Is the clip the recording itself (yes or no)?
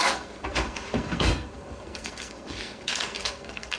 no